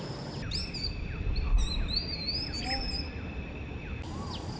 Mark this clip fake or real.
real